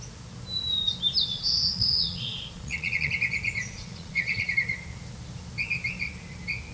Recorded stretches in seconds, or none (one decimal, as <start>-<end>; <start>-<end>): 0.0-1.3; 3.1-3.6; 4.5-6.7